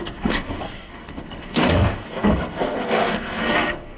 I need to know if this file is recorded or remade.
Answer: remade